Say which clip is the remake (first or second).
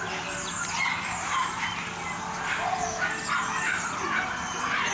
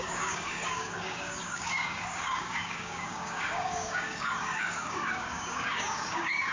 second